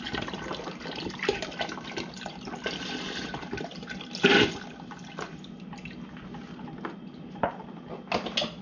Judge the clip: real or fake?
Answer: real